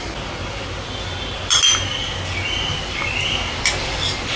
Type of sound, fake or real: real